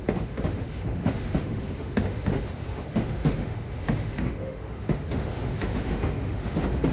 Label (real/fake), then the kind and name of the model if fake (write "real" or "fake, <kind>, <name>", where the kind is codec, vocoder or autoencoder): fake, autoencoder, DAC-VAE